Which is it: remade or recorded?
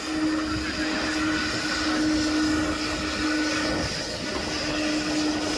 recorded